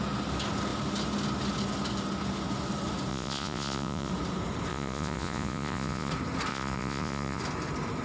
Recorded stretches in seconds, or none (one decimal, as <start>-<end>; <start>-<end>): 0.0-3.1; 4.1-4.7; 6.1-6.5; 7.4-8.0